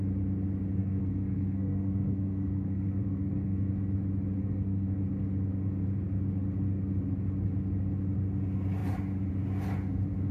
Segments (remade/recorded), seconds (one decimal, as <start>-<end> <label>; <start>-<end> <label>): 0.0-0.8 recorded; 0.8-3.7 remade; 3.7-4.4 recorded; 4.4-5.0 remade; 5.0-10.3 recorded